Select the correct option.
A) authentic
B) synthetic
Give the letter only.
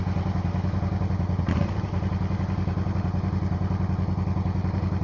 A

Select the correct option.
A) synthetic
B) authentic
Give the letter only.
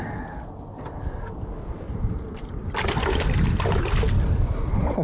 B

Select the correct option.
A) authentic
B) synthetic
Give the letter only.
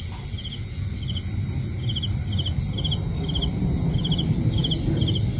A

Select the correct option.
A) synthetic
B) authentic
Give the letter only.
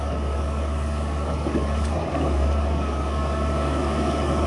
A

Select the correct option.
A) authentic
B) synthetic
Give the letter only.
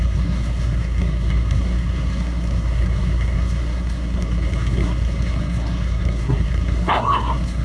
B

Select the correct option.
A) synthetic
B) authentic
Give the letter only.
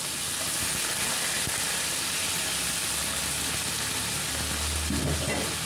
B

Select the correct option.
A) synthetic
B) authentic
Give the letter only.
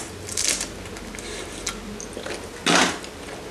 B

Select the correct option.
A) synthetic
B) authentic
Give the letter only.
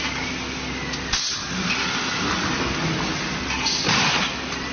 B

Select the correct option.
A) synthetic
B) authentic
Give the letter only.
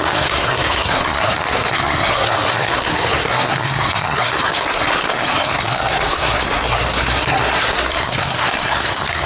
A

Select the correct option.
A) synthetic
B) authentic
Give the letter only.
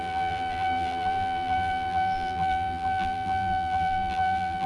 A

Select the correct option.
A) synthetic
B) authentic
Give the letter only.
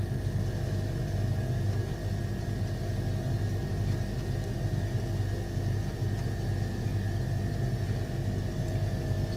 B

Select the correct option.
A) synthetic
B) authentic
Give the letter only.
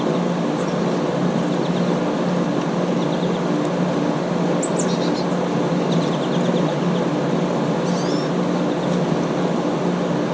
B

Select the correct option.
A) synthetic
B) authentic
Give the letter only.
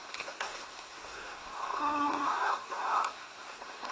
A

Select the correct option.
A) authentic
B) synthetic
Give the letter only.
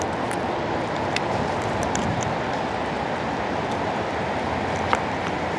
B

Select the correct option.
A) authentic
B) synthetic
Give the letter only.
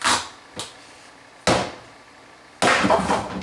A